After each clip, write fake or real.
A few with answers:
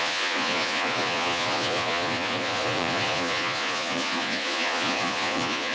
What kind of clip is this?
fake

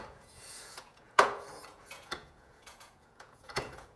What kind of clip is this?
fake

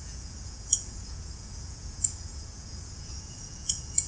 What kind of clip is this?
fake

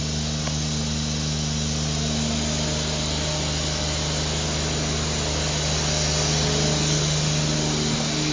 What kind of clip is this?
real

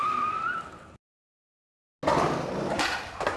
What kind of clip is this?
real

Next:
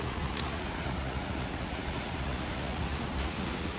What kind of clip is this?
fake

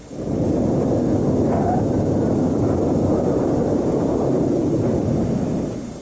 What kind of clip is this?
real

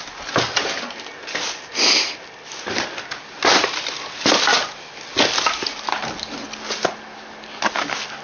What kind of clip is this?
real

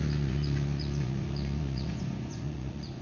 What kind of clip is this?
fake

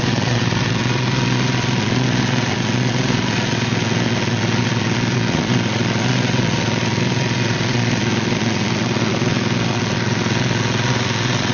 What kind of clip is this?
fake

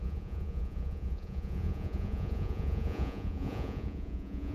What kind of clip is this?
fake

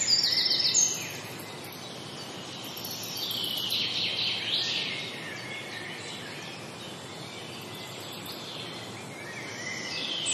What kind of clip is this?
real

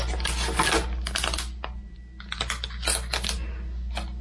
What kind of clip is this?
real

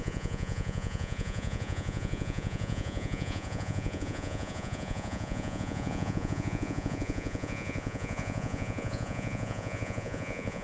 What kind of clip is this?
fake